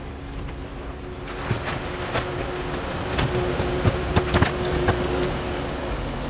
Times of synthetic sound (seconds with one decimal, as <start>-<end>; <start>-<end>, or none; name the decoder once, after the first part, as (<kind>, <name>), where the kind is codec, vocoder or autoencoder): 0.0-0.7 (codec, DAC); 4.5-6.3